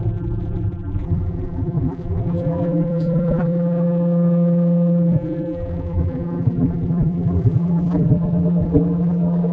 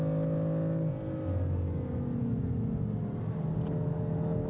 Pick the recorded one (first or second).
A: second